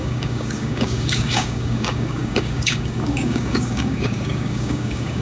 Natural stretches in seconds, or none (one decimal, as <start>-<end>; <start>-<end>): none

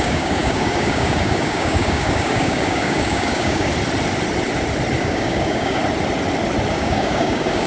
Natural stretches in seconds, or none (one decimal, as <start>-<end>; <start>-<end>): 3.7-5.0; 5.8-6.7

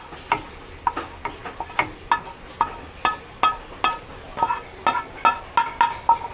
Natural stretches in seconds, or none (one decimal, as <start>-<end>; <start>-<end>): 0.0-6.3

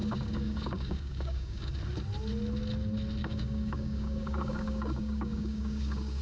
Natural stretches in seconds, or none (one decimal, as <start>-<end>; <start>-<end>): 1.7-3.2